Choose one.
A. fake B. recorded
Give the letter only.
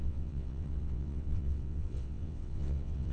A